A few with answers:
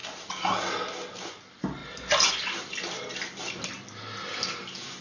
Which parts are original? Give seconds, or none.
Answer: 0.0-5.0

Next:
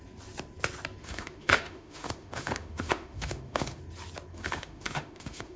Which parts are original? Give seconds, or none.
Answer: 0.0-1.0; 3.8-4.3

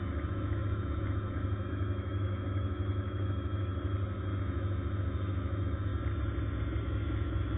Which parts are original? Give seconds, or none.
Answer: 3.7-4.4; 5.9-6.8